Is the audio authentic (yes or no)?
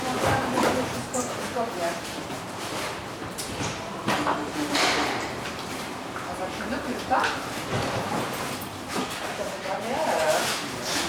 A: no